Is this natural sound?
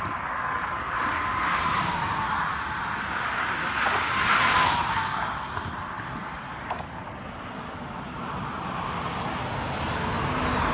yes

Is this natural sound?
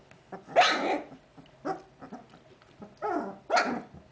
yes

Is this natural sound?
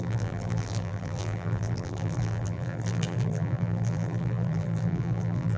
no